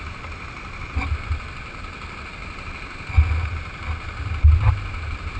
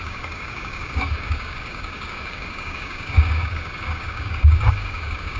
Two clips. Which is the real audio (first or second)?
first